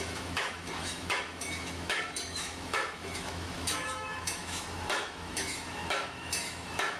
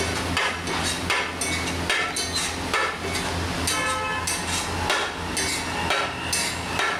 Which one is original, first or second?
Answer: second